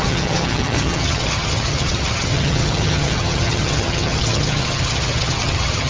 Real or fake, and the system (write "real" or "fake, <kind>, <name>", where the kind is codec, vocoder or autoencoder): fake, vocoder, HiFi-GAN